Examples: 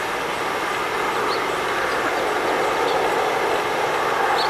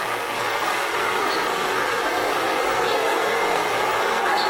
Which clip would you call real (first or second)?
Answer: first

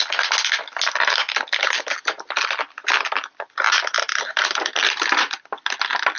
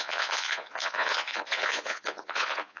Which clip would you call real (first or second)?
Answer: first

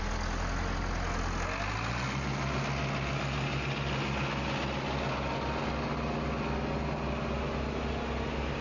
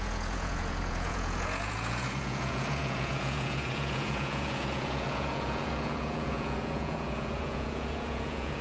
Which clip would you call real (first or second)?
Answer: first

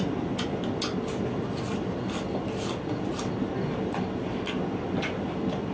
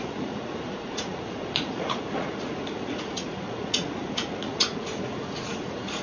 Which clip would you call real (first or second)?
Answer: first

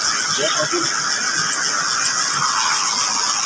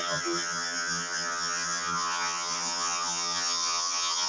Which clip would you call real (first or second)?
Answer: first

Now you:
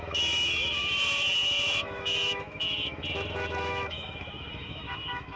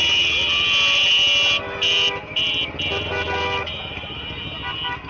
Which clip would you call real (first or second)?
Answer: second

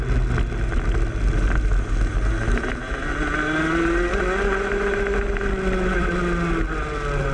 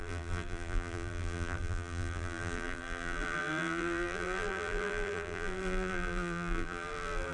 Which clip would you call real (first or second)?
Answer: first